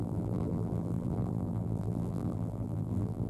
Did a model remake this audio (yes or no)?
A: yes